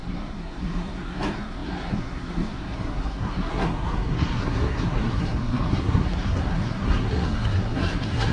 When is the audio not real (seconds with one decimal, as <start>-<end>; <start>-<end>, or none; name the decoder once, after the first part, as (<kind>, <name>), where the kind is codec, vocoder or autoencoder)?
0.0-8.3 (codec, SNAC)